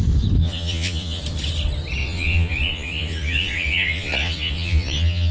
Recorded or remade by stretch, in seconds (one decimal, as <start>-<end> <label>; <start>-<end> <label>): 0.0-0.4 recorded; 0.4-1.2 remade; 1.2-2.0 recorded; 2.0-5.3 remade